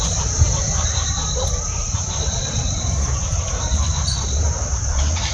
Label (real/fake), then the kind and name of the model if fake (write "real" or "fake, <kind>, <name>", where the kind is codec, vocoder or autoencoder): fake, vocoder, BigVGAN v2